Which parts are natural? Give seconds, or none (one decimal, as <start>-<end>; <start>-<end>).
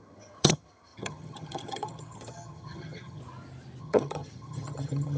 3.2-3.8